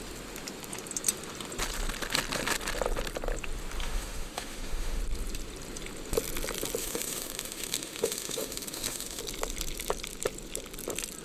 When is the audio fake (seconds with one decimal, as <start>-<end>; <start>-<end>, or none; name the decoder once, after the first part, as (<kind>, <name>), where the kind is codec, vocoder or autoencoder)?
3.8-5.0 (autoencoder, DAC-VAE); 6.8-9.2